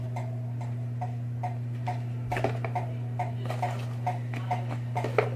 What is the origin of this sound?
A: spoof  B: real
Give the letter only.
B